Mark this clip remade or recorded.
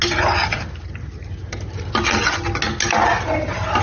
recorded